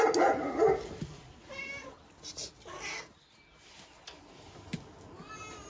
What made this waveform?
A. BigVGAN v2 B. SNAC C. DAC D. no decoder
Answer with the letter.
D